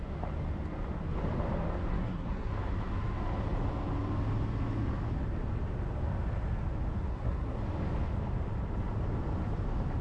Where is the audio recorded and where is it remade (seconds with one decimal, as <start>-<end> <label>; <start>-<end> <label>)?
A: 0.0-1.9 recorded; 1.9-2.5 remade; 2.5-7.1 recorded; 7.1-7.6 remade; 7.6-10.0 recorded